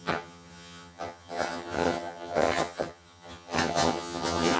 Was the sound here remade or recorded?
remade